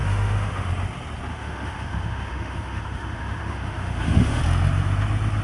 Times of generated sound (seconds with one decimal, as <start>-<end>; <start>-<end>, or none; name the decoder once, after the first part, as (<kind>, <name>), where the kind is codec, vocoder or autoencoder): 0.0-0.7 (autoencoder, DAC-VAE); 1.3-4.4